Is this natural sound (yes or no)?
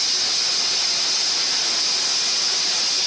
yes